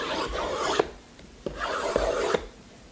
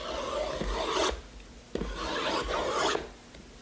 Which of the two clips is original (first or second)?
second